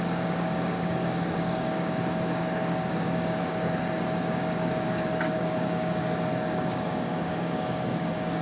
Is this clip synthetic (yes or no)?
yes